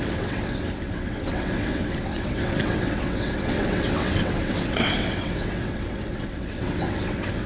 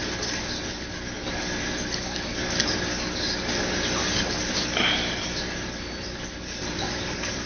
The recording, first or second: second